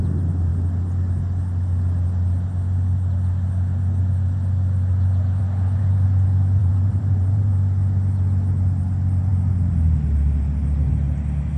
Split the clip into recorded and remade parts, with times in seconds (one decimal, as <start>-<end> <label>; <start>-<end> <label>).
0.0-6.6 recorded; 6.6-7.5 remade; 7.5-11.6 recorded